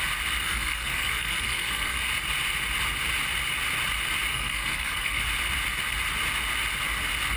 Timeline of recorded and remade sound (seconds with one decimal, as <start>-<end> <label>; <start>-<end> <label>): 0.0-0.4 recorded; 0.4-2.0 remade; 2.0-4.3 recorded; 4.3-5.2 remade; 5.2-7.4 recorded